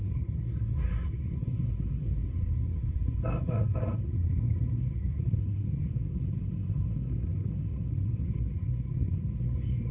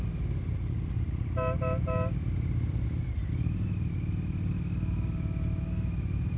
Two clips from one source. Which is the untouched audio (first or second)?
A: second